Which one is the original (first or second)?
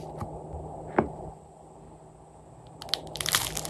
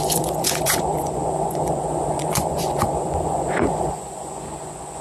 first